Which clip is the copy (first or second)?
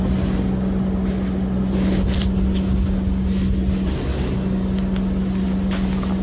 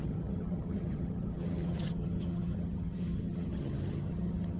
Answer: second